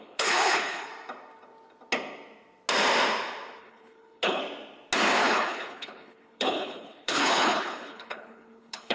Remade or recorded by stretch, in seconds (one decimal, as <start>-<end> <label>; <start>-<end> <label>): 0.0-0.9 remade; 0.9-3.6 recorded; 3.6-4.4 remade; 4.4-5.2 recorded; 5.2-8.9 remade